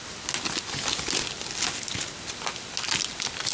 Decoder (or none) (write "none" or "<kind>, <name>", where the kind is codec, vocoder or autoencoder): none